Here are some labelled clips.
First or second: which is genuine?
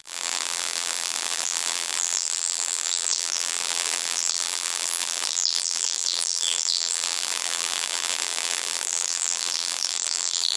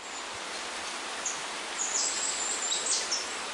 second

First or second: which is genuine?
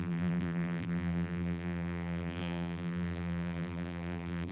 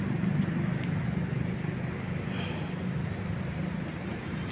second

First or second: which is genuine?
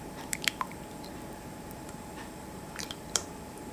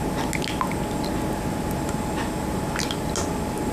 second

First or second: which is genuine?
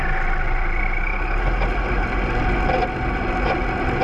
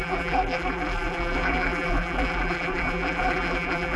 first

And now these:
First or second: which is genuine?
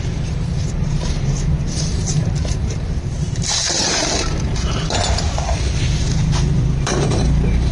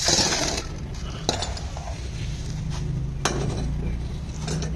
second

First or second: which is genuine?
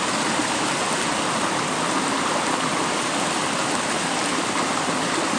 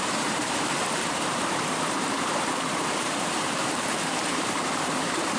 first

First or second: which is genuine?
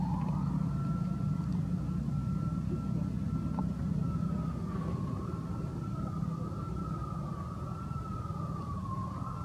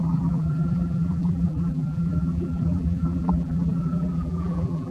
first